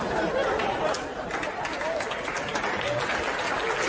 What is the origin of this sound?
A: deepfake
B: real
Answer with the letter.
B